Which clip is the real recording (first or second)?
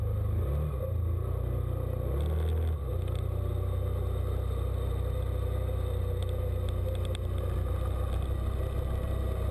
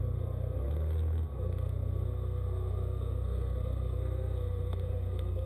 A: first